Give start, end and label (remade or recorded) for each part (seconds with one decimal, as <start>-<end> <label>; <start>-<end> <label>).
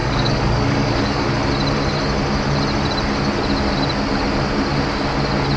0.0-1.3 remade; 1.3-5.6 recorded